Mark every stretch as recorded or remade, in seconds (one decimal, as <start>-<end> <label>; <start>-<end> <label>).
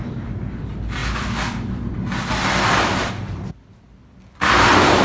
0.0-5.0 remade